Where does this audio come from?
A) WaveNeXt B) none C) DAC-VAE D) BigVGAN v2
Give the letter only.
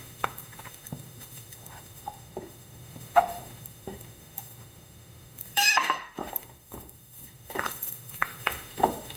C